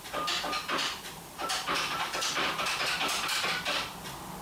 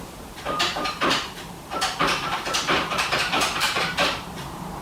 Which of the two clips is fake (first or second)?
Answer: second